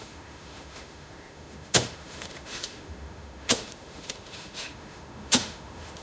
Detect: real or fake fake